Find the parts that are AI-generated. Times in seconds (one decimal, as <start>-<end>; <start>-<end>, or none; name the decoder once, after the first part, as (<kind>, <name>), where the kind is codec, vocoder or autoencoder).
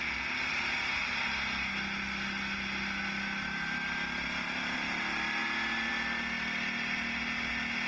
none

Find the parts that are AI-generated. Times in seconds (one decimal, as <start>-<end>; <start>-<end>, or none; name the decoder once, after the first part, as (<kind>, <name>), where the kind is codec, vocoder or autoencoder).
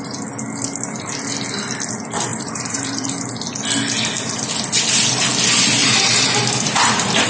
2.3-3.1 (vocoder, BigVGAN v2); 5.8-7.3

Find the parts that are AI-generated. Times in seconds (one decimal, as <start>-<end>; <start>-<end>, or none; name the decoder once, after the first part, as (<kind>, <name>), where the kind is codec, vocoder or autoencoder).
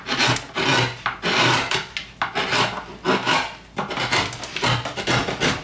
none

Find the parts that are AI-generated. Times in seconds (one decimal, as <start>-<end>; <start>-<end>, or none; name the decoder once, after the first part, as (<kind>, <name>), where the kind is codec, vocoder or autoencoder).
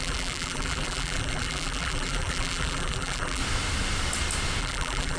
0.0-3.4 (vocoder, BigVGAN v2); 4.6-5.2